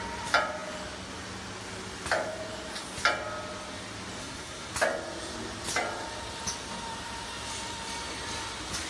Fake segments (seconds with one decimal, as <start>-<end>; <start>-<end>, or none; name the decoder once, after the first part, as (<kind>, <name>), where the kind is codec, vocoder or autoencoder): 4.2-4.7 (codec, SNAC)